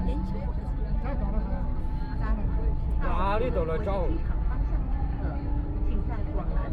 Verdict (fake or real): real